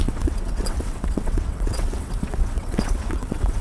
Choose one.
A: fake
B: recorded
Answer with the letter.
A